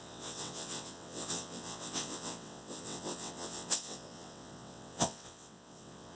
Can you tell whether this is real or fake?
fake